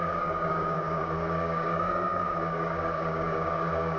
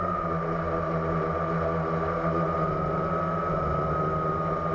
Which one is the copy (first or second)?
first